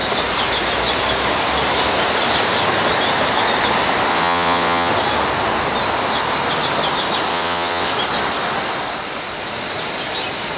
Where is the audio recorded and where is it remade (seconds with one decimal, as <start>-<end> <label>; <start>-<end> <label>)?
0.0-4.1 recorded; 4.1-4.9 remade; 4.9-7.3 recorded; 7.3-7.9 remade; 7.9-10.6 recorded